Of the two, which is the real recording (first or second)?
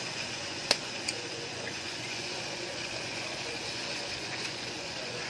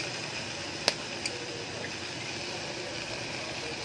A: second